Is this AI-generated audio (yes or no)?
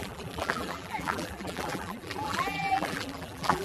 yes